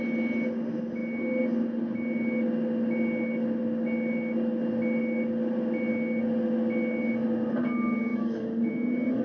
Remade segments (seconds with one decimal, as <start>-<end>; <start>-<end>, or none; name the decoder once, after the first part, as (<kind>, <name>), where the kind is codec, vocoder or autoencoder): 8.1-9.2 (autoencoder, DAC-VAE)